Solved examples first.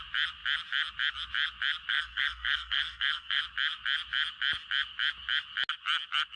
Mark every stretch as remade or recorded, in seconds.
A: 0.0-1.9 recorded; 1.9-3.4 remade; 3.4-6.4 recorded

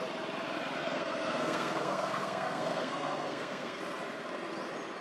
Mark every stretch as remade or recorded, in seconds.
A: 0.0-0.8 recorded; 0.8-3.8 remade; 3.8-5.0 recorded

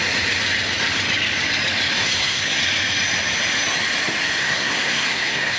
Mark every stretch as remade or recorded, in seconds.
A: 0.0-1.9 recorded; 1.9-2.6 remade; 2.6-4.4 recorded; 4.4-5.6 remade

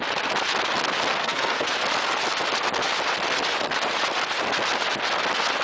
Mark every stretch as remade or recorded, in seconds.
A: 0.0-1.1 recorded; 1.1-1.7 remade; 1.7-5.6 recorded

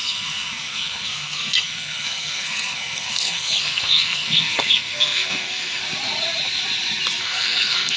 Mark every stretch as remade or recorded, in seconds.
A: 0.0-5.8 remade; 5.8-7.2 recorded; 7.2-8.0 remade